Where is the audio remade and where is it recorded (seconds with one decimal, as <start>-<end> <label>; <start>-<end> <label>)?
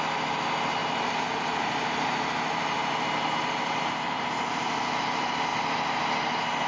0.0-0.8 recorded; 0.8-4.3 remade; 4.3-6.7 recorded